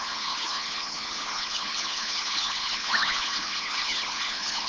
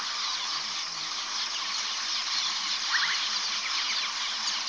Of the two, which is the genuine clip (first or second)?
second